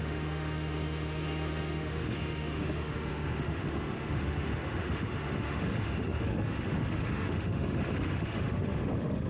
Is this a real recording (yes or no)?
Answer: no